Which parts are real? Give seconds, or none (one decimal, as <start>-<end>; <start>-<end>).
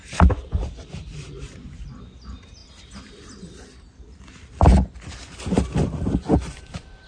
0.0-7.1